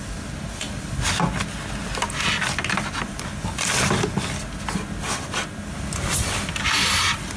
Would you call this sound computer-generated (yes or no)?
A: no